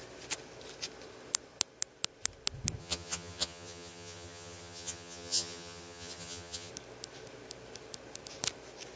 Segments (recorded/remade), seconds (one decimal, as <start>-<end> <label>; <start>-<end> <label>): 0.0-2.8 recorded; 2.8-6.7 remade; 6.7-9.0 recorded